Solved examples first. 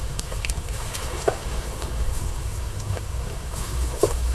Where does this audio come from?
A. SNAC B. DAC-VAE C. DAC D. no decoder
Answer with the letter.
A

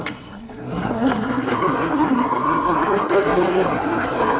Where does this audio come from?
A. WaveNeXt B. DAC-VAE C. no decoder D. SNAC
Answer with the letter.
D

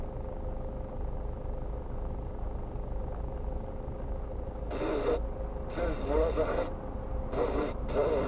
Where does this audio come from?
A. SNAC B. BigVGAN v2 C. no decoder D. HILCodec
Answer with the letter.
C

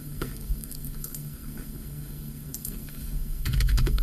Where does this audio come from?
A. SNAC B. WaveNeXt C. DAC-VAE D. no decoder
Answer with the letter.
A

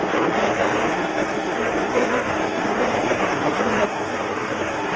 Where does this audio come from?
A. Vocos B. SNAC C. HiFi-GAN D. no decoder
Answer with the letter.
B